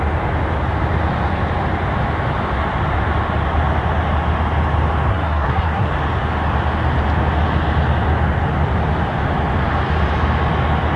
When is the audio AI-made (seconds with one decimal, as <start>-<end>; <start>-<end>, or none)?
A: 5.1-5.9